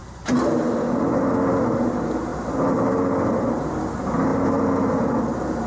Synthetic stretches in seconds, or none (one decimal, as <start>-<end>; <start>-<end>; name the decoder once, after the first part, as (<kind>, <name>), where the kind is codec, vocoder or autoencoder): none